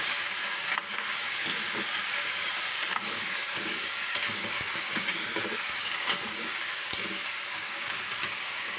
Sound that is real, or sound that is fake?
fake